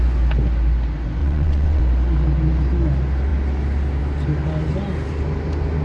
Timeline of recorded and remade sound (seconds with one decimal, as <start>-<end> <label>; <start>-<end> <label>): 0.0-1.2 recorded; 1.2-1.8 remade; 1.8-5.8 recorded